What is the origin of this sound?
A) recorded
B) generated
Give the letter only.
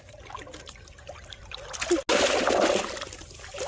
A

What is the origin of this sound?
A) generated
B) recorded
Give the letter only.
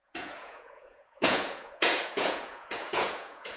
A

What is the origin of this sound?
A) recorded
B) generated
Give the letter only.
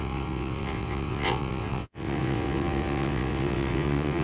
B